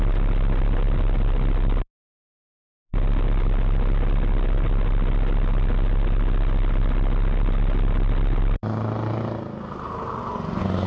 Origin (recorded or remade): recorded